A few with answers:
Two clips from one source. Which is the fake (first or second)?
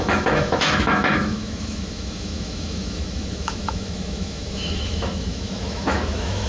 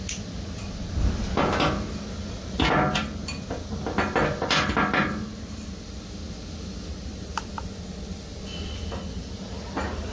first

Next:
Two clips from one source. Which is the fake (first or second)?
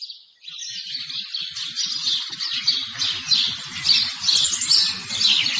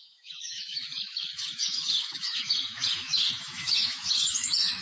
second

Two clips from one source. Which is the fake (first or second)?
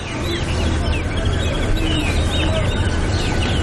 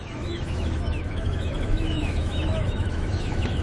second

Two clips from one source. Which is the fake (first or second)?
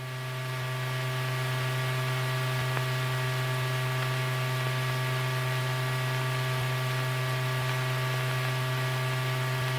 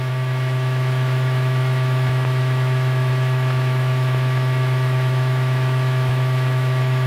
second